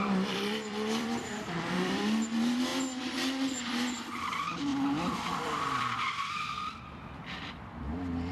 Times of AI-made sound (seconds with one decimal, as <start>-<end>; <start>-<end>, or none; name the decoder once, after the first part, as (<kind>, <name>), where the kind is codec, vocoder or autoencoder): 0.0-2.7 (vocoder, BigVGAN v2); 4.2-8.3